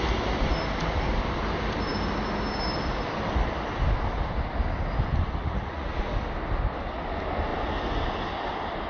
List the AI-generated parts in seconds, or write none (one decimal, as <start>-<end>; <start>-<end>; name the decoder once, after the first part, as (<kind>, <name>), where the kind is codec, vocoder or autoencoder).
5.4-6.0 (vocoder, Vocos)